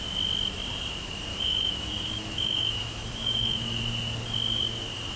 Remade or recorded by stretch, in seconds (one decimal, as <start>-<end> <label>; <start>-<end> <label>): 0.0-1.3 recorded; 1.3-3.8 remade; 3.8-5.2 recorded